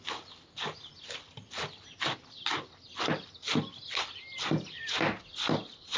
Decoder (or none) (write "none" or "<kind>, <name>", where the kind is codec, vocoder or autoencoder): none